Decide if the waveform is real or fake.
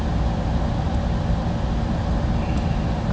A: real